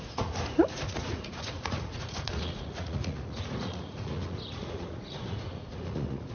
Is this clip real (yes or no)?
no